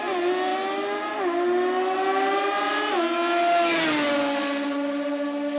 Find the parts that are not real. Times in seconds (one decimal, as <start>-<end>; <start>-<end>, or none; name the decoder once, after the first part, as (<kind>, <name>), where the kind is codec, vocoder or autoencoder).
none